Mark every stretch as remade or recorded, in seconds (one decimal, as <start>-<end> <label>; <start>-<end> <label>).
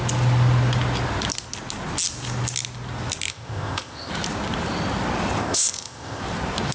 0.0-3.3 recorded; 3.3-4.1 remade; 4.1-5.4 recorded; 5.4-6.2 remade; 6.2-6.7 recorded